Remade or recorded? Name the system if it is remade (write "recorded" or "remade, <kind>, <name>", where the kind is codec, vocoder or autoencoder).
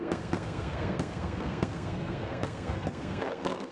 remade, codec, SNAC